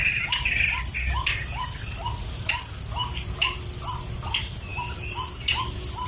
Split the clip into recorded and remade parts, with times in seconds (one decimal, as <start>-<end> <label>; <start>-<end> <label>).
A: 0.0-6.1 recorded